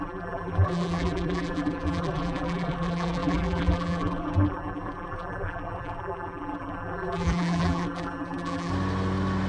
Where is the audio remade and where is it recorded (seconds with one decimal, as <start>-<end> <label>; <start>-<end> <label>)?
0.0-8.7 remade; 8.7-9.5 recorded